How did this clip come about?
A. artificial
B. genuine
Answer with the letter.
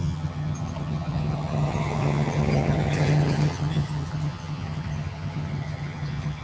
A